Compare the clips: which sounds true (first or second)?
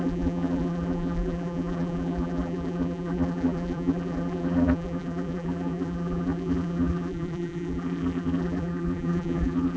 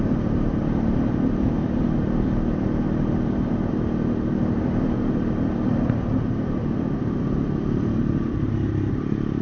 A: second